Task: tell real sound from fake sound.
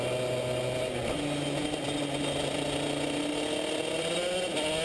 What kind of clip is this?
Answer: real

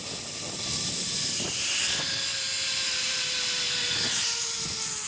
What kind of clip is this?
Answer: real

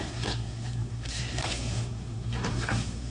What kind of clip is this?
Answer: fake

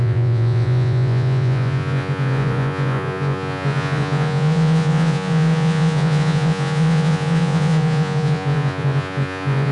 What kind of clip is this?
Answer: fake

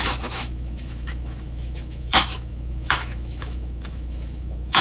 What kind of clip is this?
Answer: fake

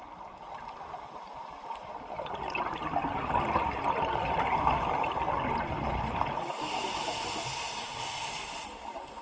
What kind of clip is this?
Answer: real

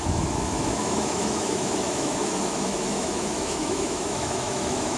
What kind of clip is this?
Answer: fake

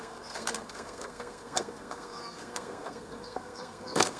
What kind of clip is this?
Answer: fake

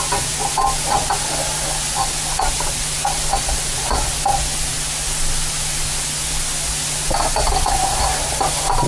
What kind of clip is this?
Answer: real